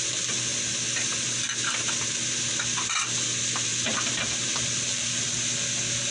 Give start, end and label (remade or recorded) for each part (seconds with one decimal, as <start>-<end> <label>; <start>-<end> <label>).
0.0-3.7 recorded; 3.7-5.2 remade; 5.2-6.1 recorded

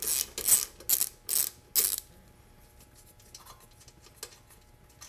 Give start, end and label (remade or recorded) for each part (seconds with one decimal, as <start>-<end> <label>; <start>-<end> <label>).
0.0-5.1 recorded

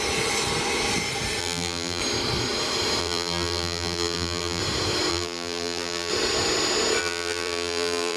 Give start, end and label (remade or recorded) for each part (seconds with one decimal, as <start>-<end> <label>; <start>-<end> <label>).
0.0-1.4 recorded; 1.4-2.0 remade; 2.0-3.0 recorded; 3.0-4.6 remade; 4.6-5.1 recorded; 5.1-6.1 remade; 6.1-7.0 recorded; 7.0-8.2 remade

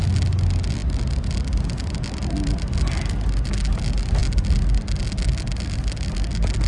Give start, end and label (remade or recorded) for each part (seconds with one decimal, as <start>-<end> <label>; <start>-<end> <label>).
0.0-6.7 recorded

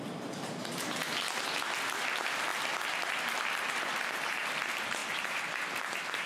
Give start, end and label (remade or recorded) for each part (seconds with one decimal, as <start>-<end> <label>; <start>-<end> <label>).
0.0-3.9 recorded; 3.9-4.6 remade; 4.6-5.0 recorded; 5.0-6.3 remade

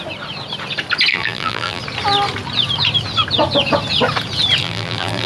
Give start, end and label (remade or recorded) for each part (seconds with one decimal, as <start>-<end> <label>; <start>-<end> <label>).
0.0-1.1 recorded; 1.1-1.8 remade; 1.8-4.6 recorded; 4.6-5.3 remade

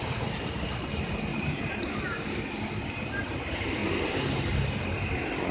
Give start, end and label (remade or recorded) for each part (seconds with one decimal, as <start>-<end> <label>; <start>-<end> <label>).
0.0-1.3 recorded; 1.3-1.9 remade; 1.9-5.5 recorded

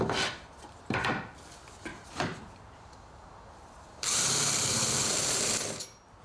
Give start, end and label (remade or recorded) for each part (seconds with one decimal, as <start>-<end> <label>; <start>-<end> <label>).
0.0-1.9 recorded; 1.9-5.5 remade; 5.5-6.2 recorded